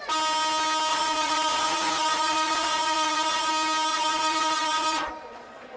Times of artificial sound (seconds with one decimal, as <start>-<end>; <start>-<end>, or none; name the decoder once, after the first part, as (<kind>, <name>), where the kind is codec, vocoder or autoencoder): 0.9-3.5 (vocoder, Vocos); 3.9-5.1